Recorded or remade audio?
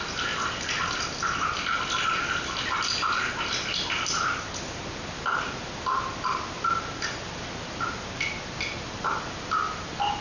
recorded